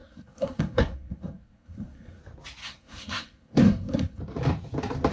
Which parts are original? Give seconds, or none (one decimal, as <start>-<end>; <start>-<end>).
2.2-2.6; 4.2-5.1